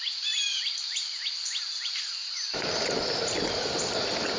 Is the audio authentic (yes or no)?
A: yes